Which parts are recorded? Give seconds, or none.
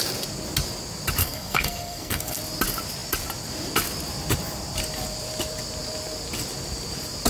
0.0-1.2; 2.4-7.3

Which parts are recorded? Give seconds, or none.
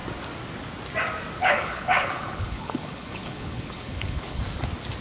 0.0-1.4; 4.4-5.0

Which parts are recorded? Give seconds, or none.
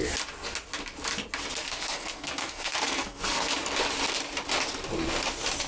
0.0-1.6; 3.5-5.7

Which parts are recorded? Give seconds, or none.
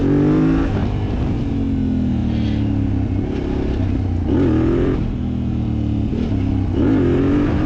0.0-7.7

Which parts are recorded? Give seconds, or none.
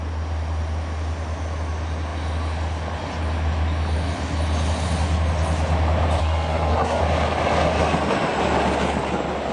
0.0-6.2; 7.0-9.5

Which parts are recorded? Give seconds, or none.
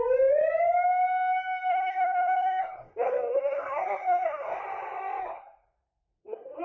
0.0-1.7; 4.6-5.2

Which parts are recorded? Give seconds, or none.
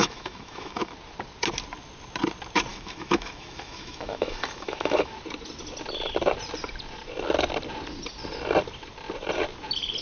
0.9-2.7; 5.1-10.0